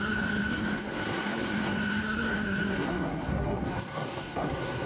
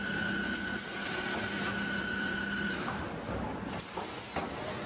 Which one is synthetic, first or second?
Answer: first